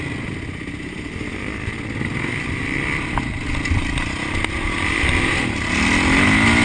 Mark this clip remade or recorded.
recorded